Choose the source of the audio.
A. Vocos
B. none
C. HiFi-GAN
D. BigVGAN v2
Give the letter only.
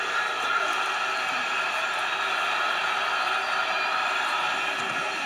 B